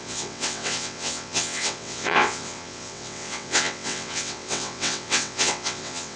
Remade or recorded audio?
remade